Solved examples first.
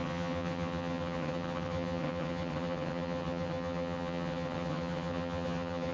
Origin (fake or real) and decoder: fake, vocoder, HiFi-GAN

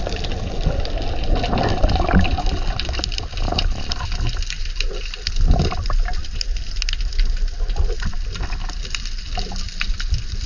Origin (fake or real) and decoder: real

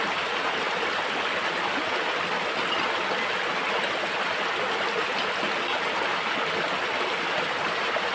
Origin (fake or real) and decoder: real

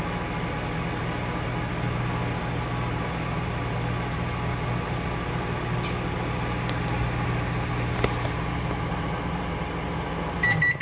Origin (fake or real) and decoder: real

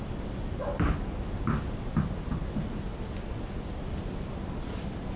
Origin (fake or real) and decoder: real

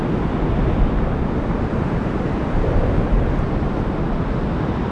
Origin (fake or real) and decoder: real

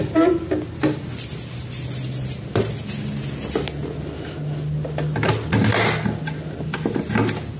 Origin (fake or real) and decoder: real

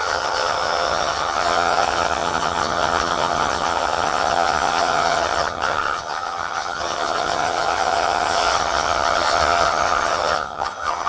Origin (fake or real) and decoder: fake, vocoder, HiFi-GAN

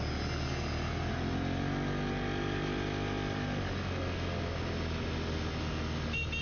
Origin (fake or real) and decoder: real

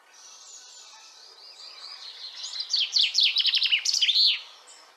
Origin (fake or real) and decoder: real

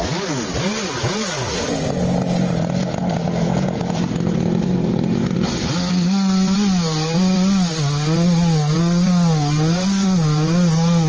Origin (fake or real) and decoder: real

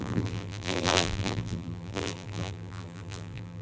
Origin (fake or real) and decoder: fake, vocoder, BigVGAN v2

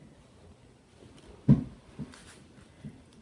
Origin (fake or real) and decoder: real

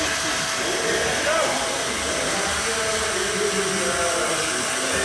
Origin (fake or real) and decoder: real